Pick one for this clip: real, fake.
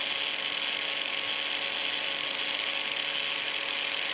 real